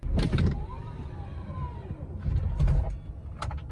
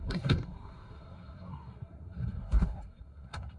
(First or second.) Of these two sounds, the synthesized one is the second